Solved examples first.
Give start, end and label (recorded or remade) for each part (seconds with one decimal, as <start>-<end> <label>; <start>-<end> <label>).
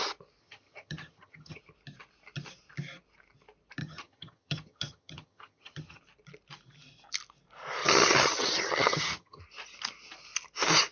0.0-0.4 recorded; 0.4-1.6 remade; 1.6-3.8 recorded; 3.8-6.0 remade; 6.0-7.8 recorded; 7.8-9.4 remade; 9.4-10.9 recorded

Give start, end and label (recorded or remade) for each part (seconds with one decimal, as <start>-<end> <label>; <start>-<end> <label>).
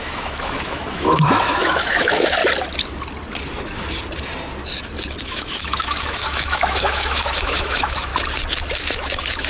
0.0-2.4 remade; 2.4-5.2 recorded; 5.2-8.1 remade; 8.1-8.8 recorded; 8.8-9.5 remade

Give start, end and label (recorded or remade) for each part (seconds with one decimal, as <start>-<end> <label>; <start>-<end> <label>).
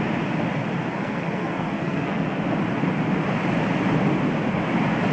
0.0-0.9 recorded; 0.9-2.4 remade; 2.4-5.1 recorded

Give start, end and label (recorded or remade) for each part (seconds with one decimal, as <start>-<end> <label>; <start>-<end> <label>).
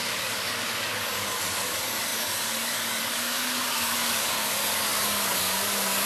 0.0-6.1 remade